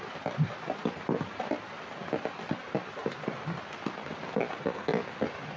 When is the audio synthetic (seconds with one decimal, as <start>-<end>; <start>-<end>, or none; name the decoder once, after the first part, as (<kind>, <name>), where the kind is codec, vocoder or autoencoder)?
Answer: none